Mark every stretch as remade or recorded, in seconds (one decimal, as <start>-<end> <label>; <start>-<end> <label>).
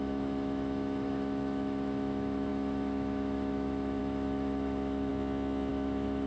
0.0-5.1 remade; 5.1-5.7 recorded; 5.7-6.3 remade